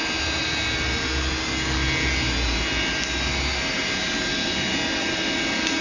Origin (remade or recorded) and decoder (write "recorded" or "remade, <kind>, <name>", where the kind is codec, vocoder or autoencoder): recorded